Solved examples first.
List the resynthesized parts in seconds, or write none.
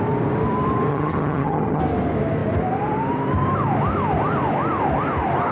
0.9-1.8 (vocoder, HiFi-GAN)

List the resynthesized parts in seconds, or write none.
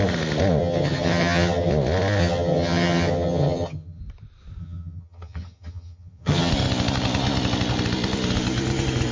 0.6-1.7 (vocoder, HiFi-GAN); 2.2-4.0; 4.6-6.5